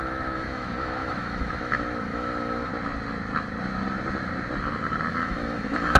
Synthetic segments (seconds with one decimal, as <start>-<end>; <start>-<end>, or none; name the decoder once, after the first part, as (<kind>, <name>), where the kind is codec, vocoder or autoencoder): 0.0-2.7 (autoencoder, DAC-VAE); 5.1-6.0